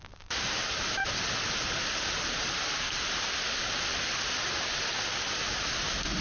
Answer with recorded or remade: recorded